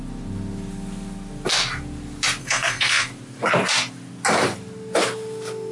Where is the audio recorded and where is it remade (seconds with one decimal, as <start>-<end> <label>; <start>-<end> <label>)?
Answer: 0.0-2.4 recorded; 2.4-3.1 remade; 3.1-5.7 recorded